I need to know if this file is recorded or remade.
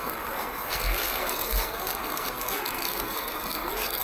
remade